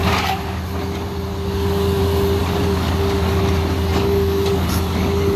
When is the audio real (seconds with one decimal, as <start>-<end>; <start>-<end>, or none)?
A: 0.6-1.3; 2.0-2.4; 3.4-3.9